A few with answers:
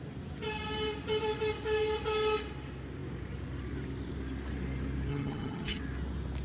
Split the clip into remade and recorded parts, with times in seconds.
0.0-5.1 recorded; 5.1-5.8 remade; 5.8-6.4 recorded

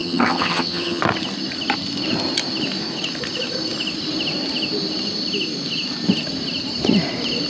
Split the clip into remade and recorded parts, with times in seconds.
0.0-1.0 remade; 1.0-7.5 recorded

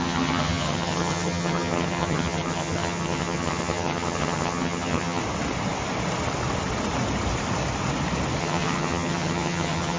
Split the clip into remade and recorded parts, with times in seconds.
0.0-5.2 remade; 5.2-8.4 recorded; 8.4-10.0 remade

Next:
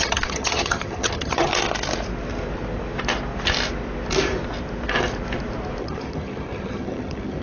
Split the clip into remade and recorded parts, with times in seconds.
0.0-1.5 remade; 1.5-5.8 recorded; 5.8-7.4 remade

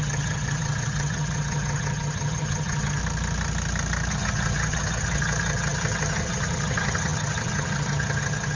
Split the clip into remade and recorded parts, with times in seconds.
0.0-3.0 remade; 3.0-4.1 recorded; 4.1-8.6 remade